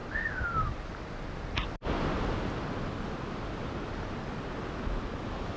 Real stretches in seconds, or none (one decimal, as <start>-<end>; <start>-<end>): 0.0-5.6